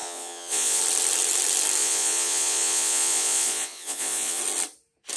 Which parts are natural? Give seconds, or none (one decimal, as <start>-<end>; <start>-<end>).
0.8-1.8; 4.4-5.2